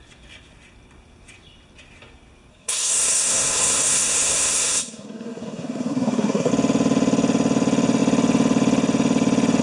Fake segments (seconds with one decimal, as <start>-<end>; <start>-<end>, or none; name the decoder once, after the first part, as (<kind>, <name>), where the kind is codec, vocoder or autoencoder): 2.5-6.5 (codec, SNAC)